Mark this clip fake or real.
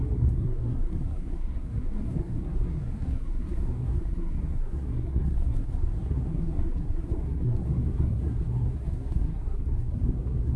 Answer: fake